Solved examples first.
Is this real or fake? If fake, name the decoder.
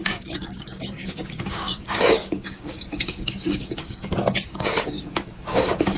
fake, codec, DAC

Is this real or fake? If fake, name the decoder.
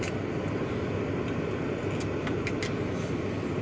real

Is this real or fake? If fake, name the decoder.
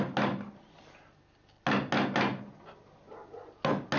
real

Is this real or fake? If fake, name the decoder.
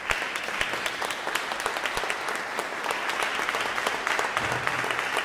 real